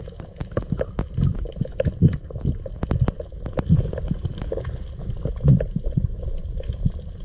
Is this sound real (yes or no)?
yes